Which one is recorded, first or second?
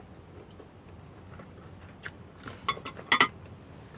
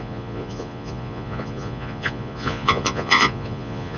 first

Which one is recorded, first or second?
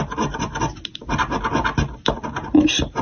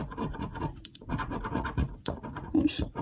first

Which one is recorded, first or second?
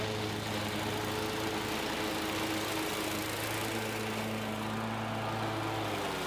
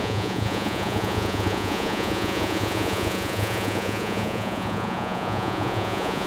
first